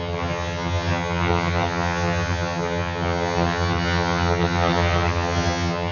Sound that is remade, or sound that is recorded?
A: remade